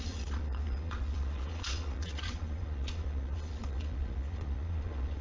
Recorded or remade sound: remade